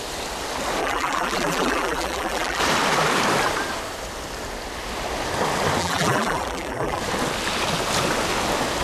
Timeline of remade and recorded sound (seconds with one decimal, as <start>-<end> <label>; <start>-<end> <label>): 0.0-0.8 recorded; 0.8-2.6 remade; 2.6-5.8 recorded; 5.8-7.0 remade; 7.0-8.8 recorded